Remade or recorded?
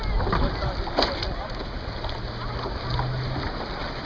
recorded